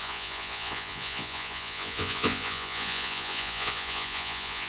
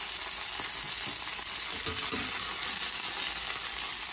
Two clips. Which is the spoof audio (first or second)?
first